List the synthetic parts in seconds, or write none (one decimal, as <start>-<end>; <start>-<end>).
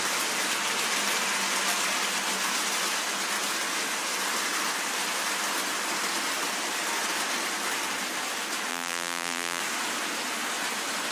8.7-9.6